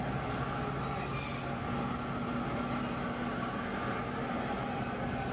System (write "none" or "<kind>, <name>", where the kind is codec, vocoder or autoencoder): none